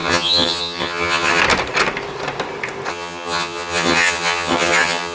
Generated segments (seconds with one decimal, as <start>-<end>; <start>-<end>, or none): 0.0-1.4; 2.9-5.1